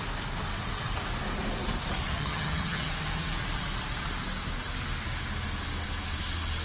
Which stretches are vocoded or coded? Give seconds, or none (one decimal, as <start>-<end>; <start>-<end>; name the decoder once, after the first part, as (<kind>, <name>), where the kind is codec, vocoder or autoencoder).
2.1-2.9 (vocoder, HiFi-GAN)